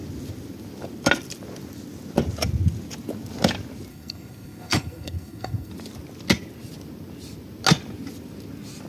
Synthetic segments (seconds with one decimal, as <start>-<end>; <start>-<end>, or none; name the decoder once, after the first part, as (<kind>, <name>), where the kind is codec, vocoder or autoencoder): 3.9-5.7 (codec, SNAC)